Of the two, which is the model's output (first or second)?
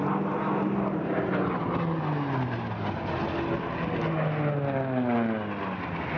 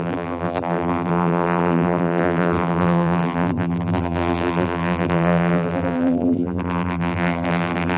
second